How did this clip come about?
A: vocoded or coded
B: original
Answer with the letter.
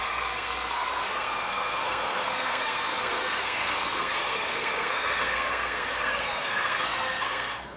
A